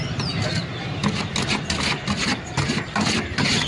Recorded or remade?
recorded